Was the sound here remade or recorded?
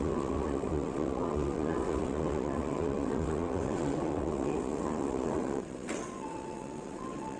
remade